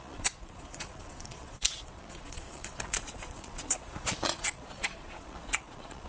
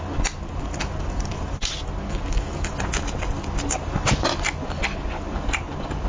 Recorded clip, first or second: second